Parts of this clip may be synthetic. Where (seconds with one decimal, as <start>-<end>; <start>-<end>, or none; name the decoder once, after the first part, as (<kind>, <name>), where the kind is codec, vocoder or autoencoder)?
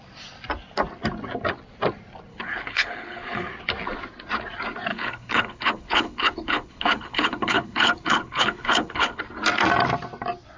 2.3-3.5 (codec, HILCodec); 4.9-9.2